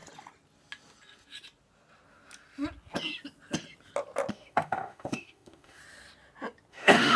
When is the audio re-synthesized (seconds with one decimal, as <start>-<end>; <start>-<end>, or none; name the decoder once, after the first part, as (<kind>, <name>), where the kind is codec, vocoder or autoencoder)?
4.3-5.8 (autoencoder, DAC-VAE); 6.7-7.2